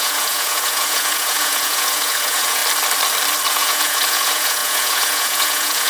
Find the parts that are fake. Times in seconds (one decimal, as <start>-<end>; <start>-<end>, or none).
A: 0.0-2.6; 3.5-5.9

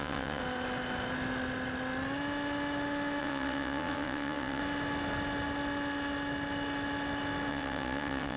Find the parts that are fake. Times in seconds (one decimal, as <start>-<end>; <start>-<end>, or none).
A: 0.0-0.4; 3.2-4.6; 7.5-8.4